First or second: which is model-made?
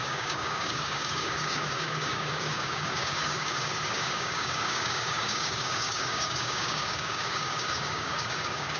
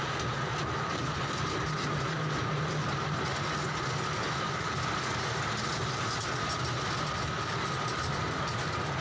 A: first